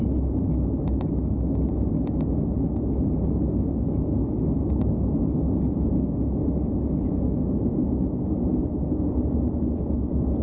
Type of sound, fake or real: real